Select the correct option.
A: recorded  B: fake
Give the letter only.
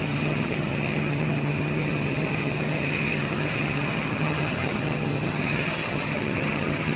B